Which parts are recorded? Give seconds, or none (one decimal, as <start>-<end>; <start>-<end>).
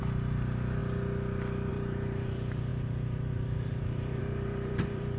0.8-1.7